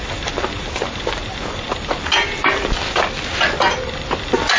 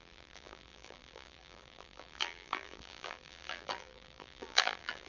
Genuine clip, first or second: first